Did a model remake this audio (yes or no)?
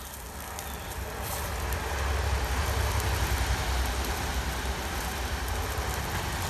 no